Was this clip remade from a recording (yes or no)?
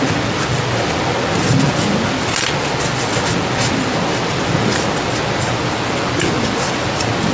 no